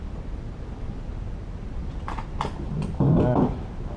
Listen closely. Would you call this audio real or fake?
real